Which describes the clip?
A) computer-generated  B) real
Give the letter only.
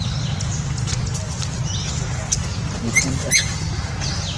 B